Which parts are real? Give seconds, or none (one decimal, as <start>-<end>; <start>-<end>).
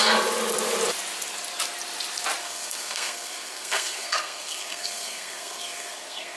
0.0-2.4